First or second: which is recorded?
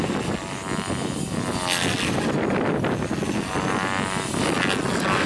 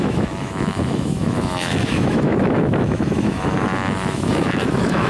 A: first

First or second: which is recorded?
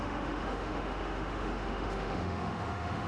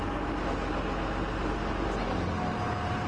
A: second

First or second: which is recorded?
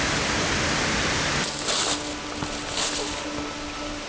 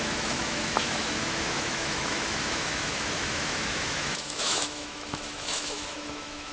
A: first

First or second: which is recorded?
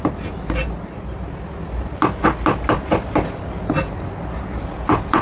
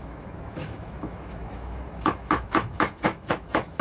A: first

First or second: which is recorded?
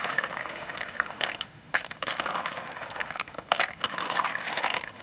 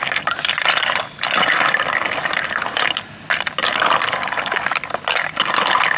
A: second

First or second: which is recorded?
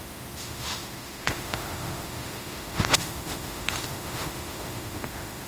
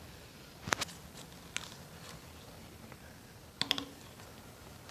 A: second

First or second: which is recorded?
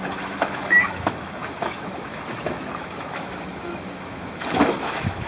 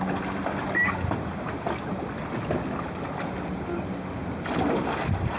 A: second